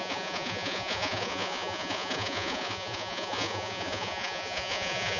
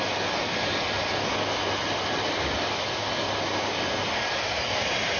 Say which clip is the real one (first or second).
second